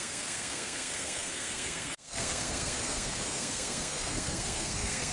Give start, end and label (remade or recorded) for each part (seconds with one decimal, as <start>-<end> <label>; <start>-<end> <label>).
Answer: 0.0-5.1 remade